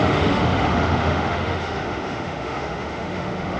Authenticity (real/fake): fake